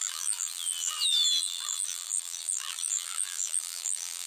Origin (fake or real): fake